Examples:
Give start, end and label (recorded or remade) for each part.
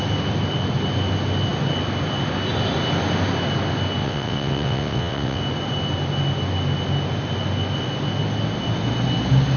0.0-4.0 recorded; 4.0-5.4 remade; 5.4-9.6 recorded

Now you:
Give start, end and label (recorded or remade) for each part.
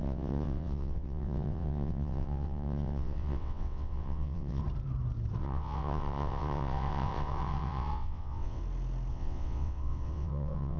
0.0-4.6 remade; 4.6-5.4 recorded; 5.4-8.6 remade; 8.6-9.1 recorded; 9.1-10.8 remade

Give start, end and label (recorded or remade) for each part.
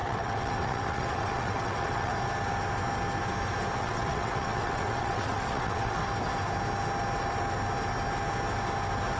0.0-2.1 remade; 2.1-3.8 recorded; 3.8-6.0 remade; 6.0-9.2 recorded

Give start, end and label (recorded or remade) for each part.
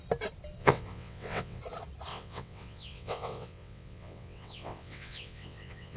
0.0-0.6 recorded; 0.6-1.6 remade; 1.6-2.1 recorded; 2.1-6.0 remade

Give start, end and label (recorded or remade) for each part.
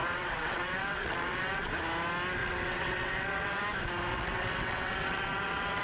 0.0-1.7 remade; 1.7-2.4 recorded; 2.4-3.6 remade; 3.6-4.1 recorded; 4.1-5.8 remade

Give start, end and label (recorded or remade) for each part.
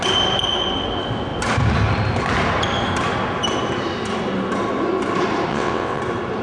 0.0-5.5 recorded; 5.5-6.0 remade; 6.0-6.4 recorded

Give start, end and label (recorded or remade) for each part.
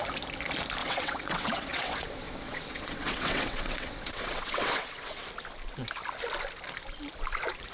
0.0-0.8 recorded; 0.8-5.3 remade; 5.3-7.7 recorded